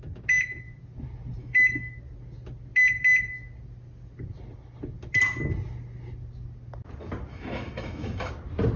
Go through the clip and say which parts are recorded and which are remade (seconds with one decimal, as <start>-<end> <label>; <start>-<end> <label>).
0.0-1.4 recorded; 1.4-1.9 remade; 1.9-7.3 recorded; 7.3-8.3 remade; 8.3-8.8 recorded